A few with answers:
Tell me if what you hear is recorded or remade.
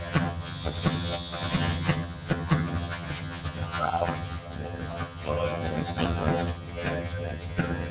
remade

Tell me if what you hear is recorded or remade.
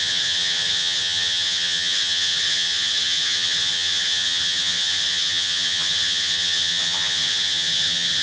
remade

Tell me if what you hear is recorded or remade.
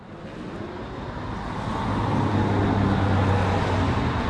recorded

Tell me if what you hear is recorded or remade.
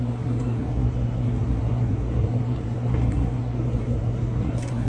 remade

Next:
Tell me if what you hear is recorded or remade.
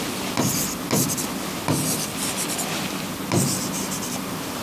recorded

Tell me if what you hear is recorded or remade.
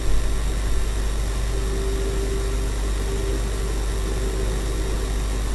recorded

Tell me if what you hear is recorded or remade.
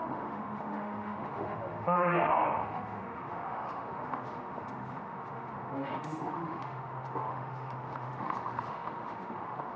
remade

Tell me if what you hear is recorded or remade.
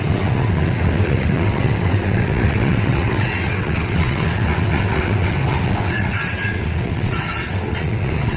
remade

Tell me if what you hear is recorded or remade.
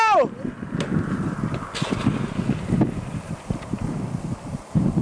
recorded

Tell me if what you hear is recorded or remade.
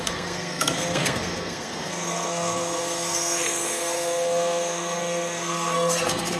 remade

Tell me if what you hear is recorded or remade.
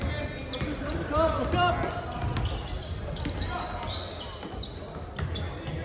recorded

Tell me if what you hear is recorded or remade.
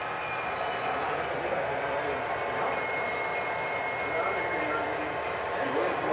recorded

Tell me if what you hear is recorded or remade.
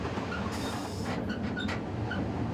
recorded